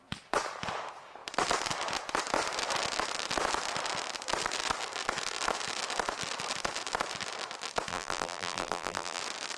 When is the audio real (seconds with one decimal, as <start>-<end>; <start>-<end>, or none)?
0.0-7.9; 9.2-9.6